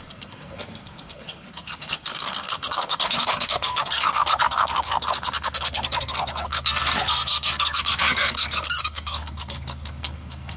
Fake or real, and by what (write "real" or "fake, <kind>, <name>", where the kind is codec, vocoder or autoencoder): fake, codec, SNAC